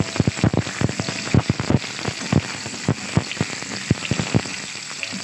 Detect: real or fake real